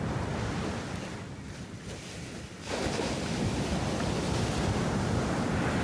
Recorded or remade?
recorded